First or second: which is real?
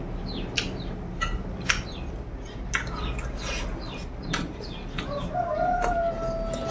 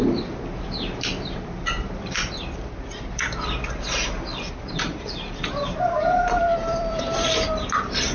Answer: first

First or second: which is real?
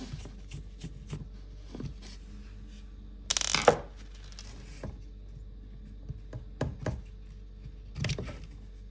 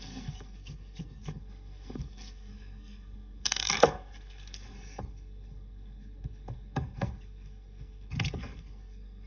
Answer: first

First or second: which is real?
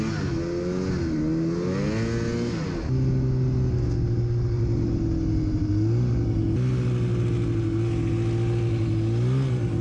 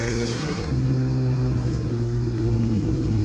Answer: first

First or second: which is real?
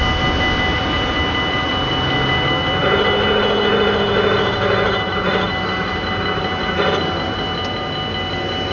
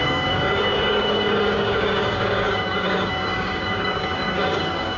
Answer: first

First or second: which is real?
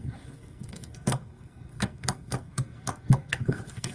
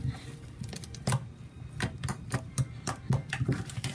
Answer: second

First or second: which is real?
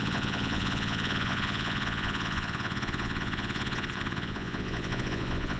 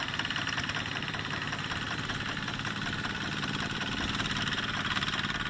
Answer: second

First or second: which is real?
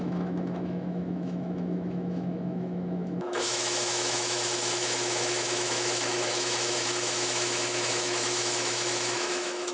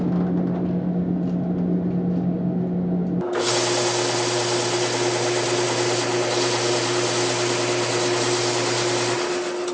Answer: second